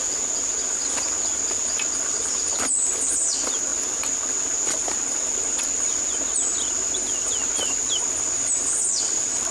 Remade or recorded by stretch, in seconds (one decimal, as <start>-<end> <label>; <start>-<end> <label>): 0.0-9.5 recorded